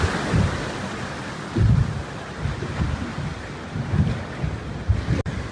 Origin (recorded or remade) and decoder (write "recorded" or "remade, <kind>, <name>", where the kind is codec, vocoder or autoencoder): recorded